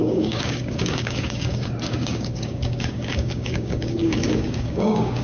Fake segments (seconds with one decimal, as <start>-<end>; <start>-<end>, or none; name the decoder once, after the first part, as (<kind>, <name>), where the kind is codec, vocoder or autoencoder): 0.0-5.2 (codec, DAC)